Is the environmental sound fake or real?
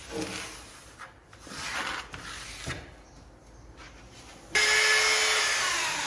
real